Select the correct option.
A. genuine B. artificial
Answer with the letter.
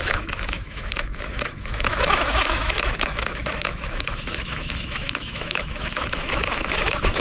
B